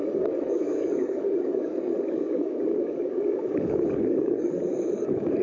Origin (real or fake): fake